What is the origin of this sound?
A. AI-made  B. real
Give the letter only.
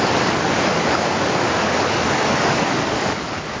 A